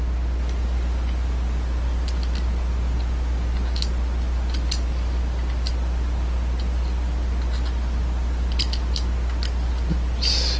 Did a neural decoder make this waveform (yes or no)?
no